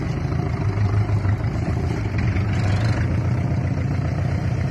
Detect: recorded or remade remade